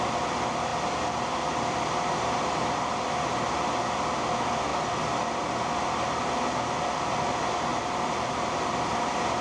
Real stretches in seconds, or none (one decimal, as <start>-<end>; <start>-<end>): 0.0-4.7; 5.6-7.7